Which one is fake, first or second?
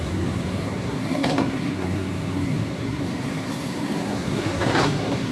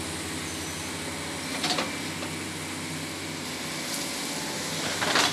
first